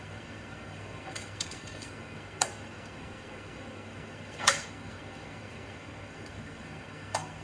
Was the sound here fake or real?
fake